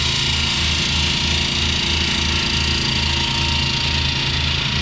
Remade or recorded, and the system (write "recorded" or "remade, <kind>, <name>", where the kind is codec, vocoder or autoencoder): recorded